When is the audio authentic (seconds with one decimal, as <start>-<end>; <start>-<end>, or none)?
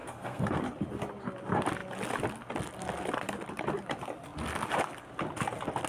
0.6-5.9